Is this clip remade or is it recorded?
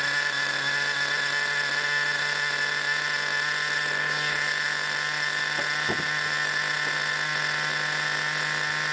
recorded